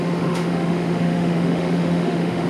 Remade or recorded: remade